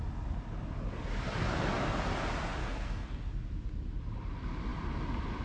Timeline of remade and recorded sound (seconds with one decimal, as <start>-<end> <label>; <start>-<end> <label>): 0.0-2.6 recorded; 2.6-3.2 remade; 3.2-5.4 recorded